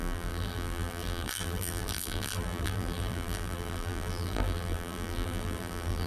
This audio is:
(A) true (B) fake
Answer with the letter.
B